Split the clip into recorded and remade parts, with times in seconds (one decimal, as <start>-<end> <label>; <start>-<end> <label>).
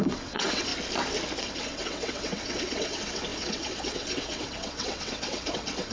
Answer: 0.0-0.7 remade; 0.7-1.4 recorded; 1.4-5.9 remade